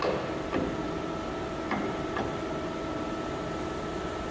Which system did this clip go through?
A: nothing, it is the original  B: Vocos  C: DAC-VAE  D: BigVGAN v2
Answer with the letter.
A